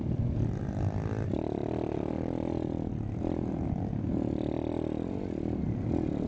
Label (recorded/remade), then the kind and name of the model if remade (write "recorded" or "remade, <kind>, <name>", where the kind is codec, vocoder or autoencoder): recorded